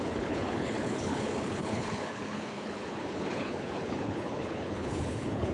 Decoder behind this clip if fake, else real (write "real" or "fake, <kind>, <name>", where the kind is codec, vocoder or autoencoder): fake, codec, HILCodec